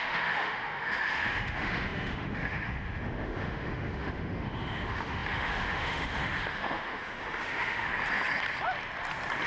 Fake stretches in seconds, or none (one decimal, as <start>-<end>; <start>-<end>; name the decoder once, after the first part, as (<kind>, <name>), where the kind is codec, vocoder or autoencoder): 0.0-7.9 (autoencoder, DAC-VAE)